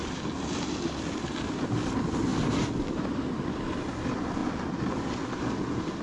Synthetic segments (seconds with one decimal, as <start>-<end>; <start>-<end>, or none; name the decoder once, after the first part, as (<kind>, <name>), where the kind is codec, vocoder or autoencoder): none